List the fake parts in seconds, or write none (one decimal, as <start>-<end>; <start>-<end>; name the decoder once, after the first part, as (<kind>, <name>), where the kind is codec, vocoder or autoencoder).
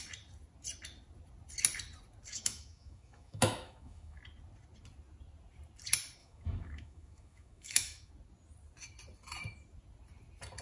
2.3-4.2 (autoencoder, DAC-VAE); 6.2-8.1